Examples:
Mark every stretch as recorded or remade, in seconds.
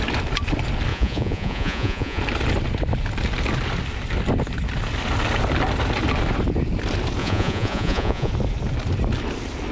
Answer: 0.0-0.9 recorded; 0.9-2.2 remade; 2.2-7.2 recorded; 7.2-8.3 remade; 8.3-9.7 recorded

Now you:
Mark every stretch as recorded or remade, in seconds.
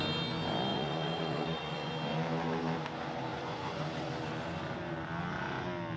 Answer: 0.0-0.7 recorded; 0.7-1.9 remade; 1.9-3.3 recorded; 3.3-3.8 remade; 3.8-6.0 recorded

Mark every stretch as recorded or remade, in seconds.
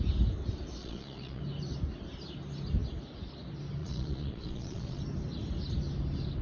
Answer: 0.0-0.8 recorded; 0.8-1.4 remade; 1.4-3.8 recorded; 3.8-5.0 remade; 5.0-6.4 recorded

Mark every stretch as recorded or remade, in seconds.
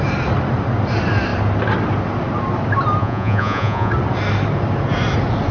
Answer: 0.0-3.0 recorded; 3.0-3.9 remade; 3.9-5.5 recorded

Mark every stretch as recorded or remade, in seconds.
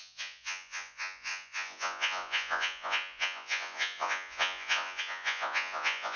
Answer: 0.0-6.2 remade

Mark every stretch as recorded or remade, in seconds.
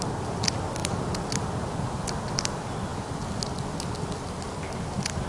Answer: 0.0-5.3 recorded